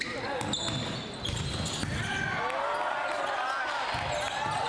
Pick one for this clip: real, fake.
real